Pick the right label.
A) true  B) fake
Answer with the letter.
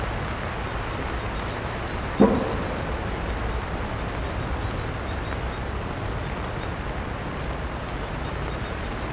A